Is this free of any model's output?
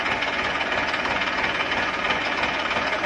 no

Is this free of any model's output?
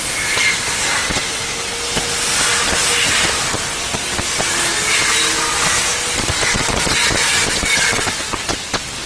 yes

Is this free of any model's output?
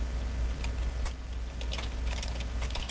yes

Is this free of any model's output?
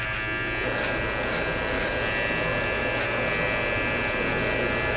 yes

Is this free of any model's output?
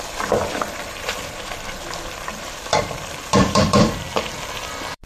no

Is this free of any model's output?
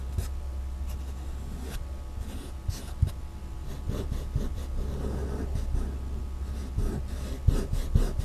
yes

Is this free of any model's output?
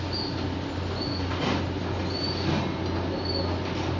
yes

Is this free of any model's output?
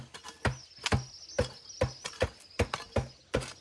yes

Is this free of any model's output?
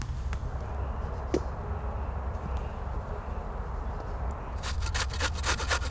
yes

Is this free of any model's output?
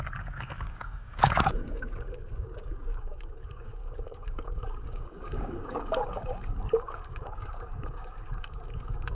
no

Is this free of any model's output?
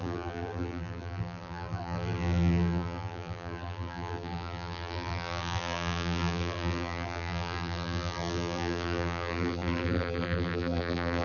no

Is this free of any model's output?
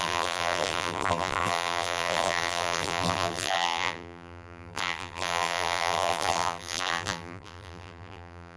no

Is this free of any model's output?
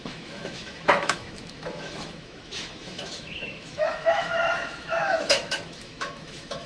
no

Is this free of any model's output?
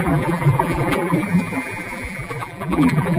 no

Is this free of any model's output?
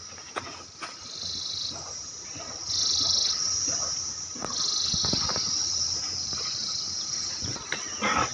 yes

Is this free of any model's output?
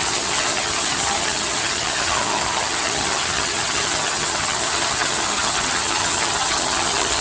no